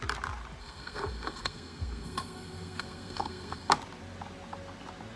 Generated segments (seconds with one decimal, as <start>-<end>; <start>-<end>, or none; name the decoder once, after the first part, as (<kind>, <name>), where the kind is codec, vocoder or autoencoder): 0.6-3.7 (codec, SNAC)